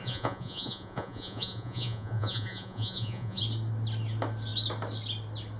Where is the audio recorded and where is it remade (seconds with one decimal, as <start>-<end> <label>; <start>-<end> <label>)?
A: 0.0-3.4 remade; 3.4-5.6 recorded